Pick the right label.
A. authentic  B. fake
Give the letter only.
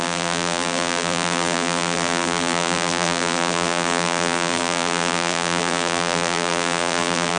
B